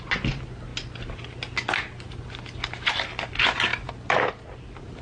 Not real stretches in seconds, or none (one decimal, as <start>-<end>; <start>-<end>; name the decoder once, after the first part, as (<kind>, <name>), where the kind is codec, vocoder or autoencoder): none